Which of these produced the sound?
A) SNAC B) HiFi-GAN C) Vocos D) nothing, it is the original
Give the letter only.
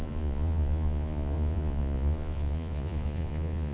C